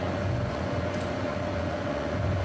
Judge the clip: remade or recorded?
remade